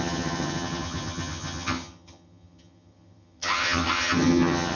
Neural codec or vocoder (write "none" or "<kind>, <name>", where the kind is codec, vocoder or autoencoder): vocoder, HiFi-GAN